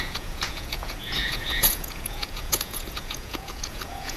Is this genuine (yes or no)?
no